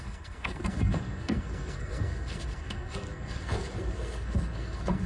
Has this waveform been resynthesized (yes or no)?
yes